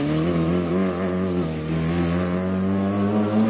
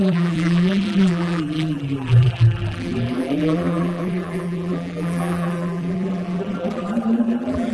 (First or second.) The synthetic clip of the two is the second